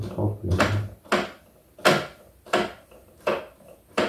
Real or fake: real